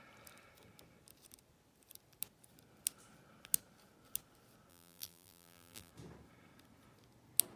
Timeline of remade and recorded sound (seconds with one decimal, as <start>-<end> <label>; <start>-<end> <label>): 0.0-4.7 recorded; 4.7-5.9 remade; 5.9-7.6 recorded